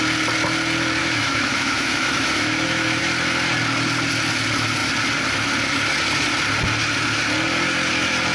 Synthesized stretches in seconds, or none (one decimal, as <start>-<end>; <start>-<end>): 1.0-3.0